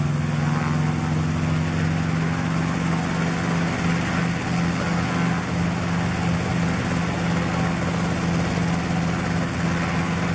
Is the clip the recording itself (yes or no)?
yes